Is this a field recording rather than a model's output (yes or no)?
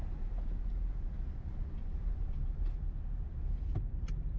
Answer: yes